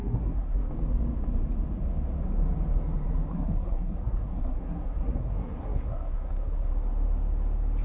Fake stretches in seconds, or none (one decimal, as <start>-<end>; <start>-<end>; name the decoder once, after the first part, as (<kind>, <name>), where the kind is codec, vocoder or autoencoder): 0.0-0.7 (codec, SNAC); 3.3-6.7